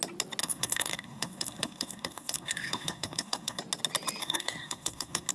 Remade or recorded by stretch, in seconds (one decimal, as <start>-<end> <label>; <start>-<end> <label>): 0.0-0.4 recorded; 0.4-3.6 remade; 3.6-4.2 recorded; 4.2-5.3 remade